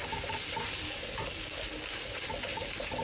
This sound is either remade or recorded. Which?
recorded